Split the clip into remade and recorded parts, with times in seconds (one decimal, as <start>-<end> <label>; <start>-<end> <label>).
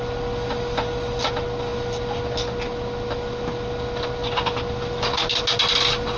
0.0-6.2 recorded